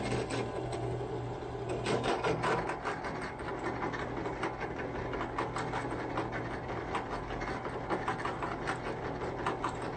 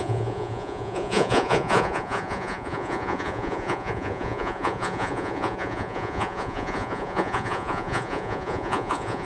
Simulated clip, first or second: second